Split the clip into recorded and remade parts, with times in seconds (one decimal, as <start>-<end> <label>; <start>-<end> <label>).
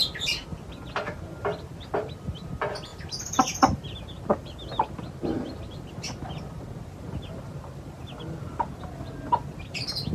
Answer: 0.0-10.1 recorded